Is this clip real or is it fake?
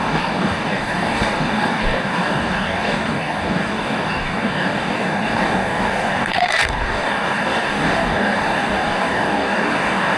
fake